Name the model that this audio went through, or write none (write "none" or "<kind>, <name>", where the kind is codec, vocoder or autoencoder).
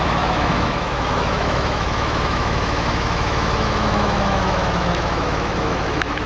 autoencoder, DAC-VAE